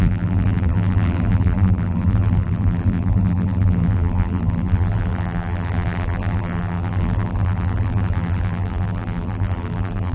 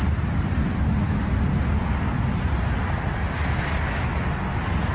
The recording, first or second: second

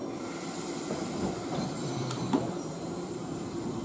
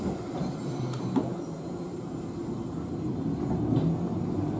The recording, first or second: second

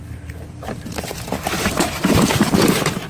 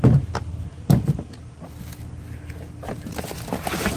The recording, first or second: second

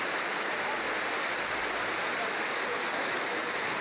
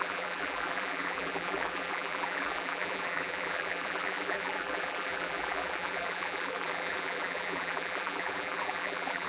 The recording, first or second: first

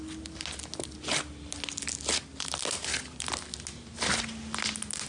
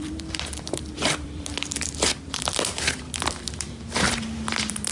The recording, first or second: first